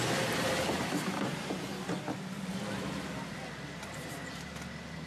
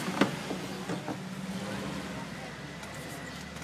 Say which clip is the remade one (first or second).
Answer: first